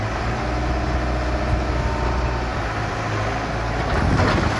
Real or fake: real